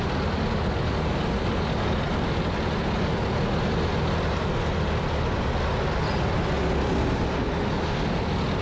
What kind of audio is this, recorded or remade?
recorded